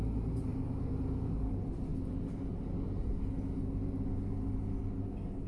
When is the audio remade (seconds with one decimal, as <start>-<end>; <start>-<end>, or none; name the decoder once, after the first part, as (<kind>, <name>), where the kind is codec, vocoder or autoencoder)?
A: none